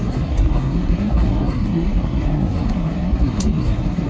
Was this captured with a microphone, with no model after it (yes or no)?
no